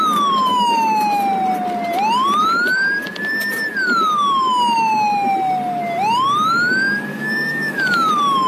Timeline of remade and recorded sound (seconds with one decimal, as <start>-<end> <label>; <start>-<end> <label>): 0.0-0.5 recorded; 0.5-1.2 remade; 1.2-7.1 recorded; 7.1-8.1 remade; 8.1-8.5 recorded